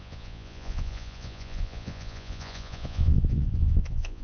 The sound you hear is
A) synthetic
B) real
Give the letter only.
A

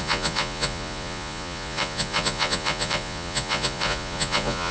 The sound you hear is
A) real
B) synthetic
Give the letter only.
B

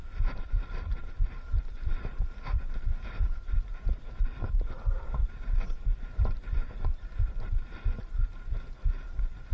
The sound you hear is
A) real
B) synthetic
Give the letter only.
B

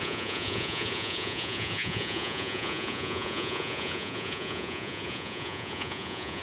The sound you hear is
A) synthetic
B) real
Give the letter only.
A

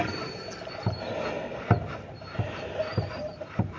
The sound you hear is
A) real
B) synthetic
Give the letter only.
A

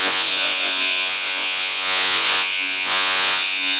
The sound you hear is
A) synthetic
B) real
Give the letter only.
A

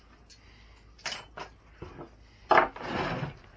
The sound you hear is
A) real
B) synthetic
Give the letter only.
A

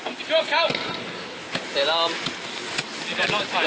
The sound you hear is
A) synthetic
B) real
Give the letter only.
B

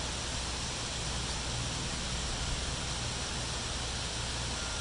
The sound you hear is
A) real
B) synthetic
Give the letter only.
A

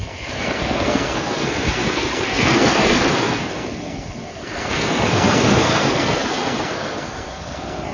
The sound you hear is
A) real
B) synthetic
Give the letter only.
B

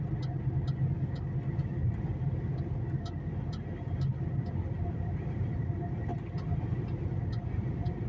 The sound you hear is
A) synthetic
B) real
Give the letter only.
B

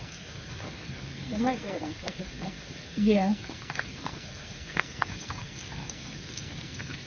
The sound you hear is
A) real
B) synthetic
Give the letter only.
B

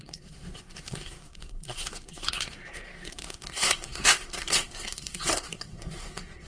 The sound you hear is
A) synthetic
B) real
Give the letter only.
A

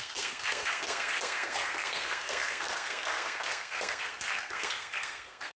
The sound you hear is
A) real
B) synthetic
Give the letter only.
B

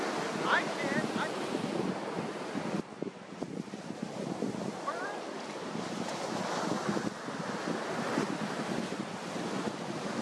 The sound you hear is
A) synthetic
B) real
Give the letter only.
B